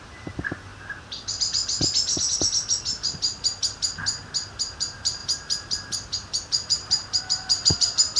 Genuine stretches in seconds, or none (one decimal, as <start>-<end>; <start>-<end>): 0.7-4.8